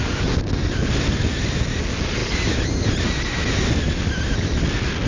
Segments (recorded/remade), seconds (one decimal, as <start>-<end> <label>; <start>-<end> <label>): 0.0-5.1 recorded